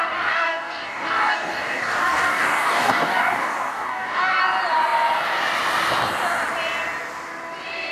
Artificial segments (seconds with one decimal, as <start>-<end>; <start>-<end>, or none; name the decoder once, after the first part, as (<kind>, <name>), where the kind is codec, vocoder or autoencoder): 0.0-4.4 (codec, DAC)

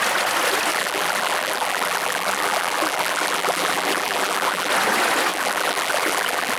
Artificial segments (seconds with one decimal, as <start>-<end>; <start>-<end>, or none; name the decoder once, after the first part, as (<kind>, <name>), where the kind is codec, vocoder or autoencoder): 0.7-4.7 (vocoder, BigVGAN v2); 5.3-6.6

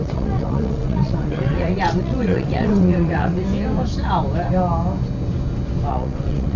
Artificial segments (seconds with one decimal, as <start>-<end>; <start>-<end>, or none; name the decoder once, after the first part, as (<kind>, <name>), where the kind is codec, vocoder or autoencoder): 0.0-3.4 (vocoder, WaveNeXt); 5.9-6.6

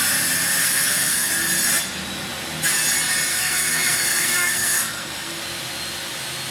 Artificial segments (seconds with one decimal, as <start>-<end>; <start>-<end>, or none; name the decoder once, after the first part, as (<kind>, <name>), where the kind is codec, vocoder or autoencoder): 0.6-1.3 (codec, SNAC); 3.3-5.4